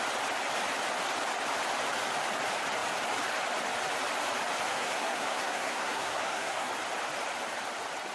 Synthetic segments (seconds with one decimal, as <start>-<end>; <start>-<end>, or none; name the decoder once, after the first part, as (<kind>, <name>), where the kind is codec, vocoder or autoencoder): 4.7-6.7 (codec, SNAC)